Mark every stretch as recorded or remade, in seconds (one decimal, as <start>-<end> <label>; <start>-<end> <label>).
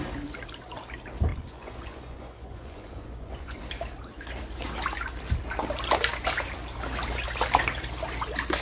0.0-1.3 recorded; 1.3-3.6 remade; 3.6-8.6 recorded